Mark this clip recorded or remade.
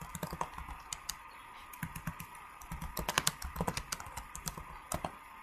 recorded